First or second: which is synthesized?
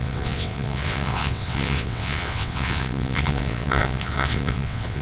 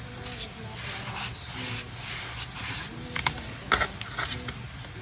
first